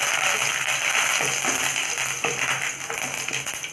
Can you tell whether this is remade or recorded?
recorded